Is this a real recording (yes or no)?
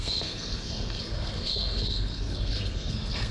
no